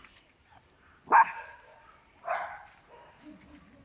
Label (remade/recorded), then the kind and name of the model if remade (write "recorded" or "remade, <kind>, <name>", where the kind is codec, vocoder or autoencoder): recorded